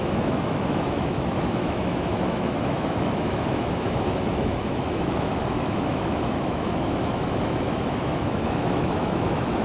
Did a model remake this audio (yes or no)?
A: yes